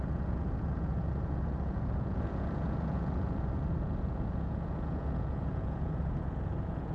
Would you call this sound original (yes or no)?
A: no